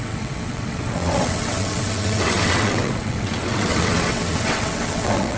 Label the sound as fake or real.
fake